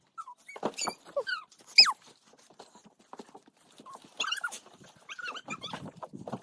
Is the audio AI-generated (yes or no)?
no